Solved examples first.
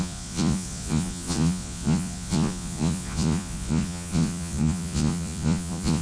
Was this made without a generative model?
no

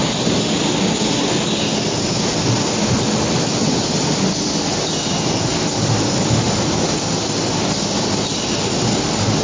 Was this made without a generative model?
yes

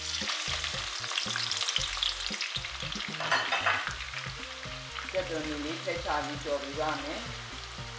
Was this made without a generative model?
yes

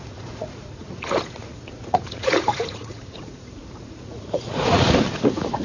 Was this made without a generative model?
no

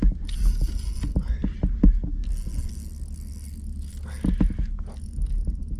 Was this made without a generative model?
yes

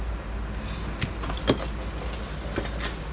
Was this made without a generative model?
yes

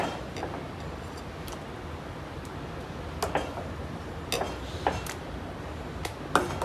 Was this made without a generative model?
yes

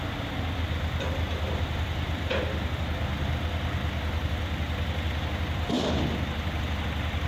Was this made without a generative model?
yes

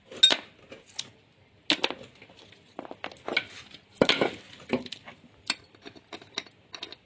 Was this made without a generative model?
yes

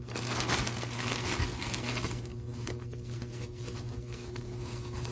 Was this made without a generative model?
no